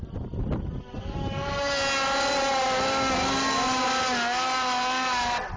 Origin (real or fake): real